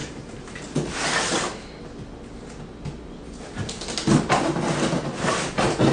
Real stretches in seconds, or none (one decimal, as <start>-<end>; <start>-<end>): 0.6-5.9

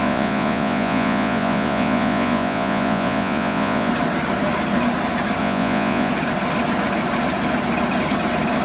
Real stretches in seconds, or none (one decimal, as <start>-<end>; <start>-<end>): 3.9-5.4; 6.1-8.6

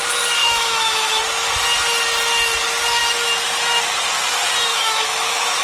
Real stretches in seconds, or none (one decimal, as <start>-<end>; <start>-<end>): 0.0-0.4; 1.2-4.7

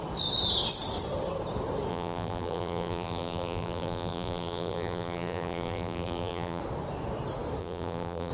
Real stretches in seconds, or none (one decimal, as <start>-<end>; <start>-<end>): 0.0-1.9; 6.6-7.6

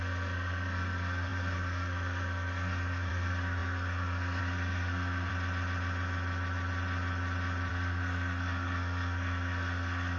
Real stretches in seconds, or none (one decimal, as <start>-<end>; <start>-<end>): 5.3-7.7

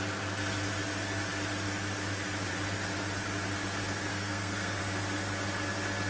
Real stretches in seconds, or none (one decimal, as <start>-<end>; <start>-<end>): 0.0-4.1; 4.8-6.1